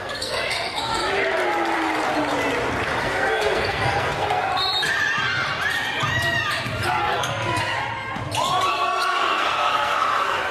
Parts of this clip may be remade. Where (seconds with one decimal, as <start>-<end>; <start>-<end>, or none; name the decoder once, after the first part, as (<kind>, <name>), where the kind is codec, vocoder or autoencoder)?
0.0-1.0 (codec, SNAC); 3.0-4.5; 7.0-7.8; 8.7-10.5